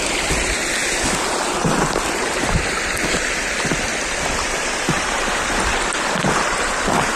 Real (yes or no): no